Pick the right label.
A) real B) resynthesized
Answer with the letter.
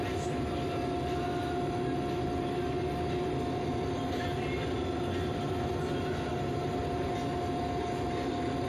A